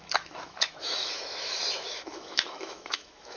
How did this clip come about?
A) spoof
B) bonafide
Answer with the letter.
A